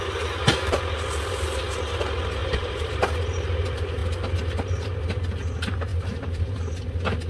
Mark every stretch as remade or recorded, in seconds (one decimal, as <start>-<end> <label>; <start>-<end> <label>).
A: 0.0-2.4 recorded; 2.4-3.0 remade; 3.0-5.9 recorded; 5.9-6.7 remade; 6.7-7.3 recorded